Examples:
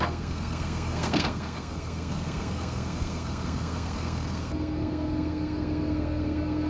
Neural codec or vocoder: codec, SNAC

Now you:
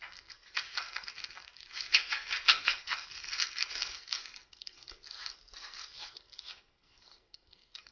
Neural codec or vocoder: codec, SNAC